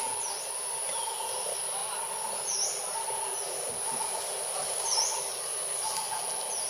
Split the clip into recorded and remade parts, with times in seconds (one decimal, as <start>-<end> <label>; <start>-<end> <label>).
0.0-6.7 recorded